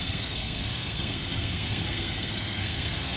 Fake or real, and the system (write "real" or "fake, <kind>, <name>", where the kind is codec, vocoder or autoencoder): fake, codec, SNAC